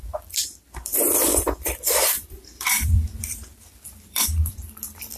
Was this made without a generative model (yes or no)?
no